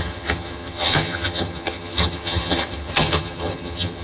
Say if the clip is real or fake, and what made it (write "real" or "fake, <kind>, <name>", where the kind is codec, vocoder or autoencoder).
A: fake, vocoder, HiFi-GAN